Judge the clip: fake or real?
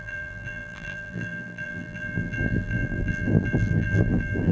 fake